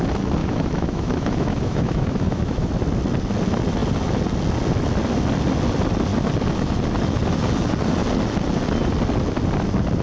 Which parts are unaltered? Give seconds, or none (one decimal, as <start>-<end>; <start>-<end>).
0.0-0.4; 2.7-10.0